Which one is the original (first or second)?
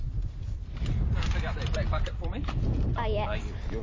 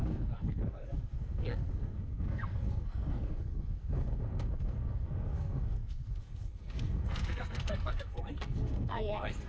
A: first